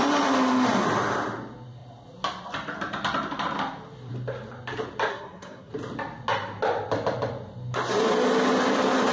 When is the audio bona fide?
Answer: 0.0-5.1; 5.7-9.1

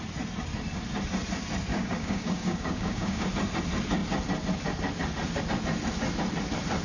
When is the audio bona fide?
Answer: 0.0-1.7; 3.3-6.8

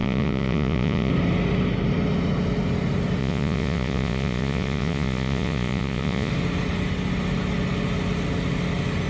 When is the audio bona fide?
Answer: 1.1-3.2; 6.3-9.1

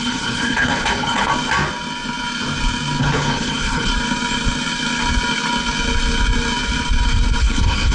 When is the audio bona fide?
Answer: 1.3-3.0; 3.9-7.4

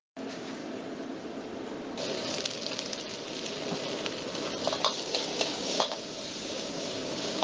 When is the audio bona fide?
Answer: 0.6-5.0

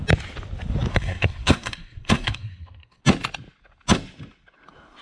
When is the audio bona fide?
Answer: 0.0-0.9; 3.0-5.0

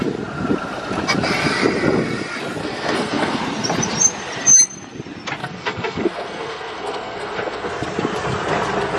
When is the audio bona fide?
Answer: 0.0-2.6; 3.4-5.4; 7.7-9.0

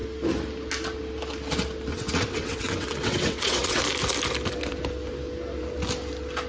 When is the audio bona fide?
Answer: 0.0-1.9; 3.8-6.5